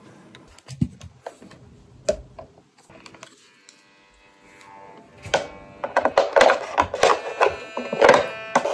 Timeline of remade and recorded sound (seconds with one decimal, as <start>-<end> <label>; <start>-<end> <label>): 0.0-8.7 recorded